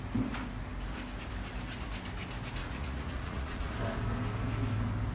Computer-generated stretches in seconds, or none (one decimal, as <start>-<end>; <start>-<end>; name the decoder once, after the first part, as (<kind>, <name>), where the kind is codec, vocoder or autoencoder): 2.6-3.7 (vocoder, Vocos)